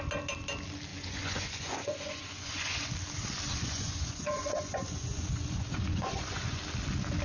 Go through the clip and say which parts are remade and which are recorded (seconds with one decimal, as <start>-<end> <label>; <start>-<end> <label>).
0.0-0.9 recorded; 0.9-2.9 remade; 2.9-3.5 recorded; 3.5-6.6 remade; 6.6-7.2 recorded